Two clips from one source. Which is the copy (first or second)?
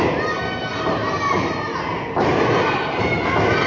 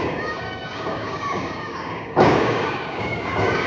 second